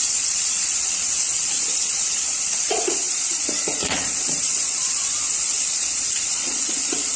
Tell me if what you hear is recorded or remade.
remade